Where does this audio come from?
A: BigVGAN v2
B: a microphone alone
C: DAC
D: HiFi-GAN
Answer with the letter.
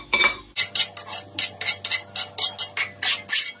B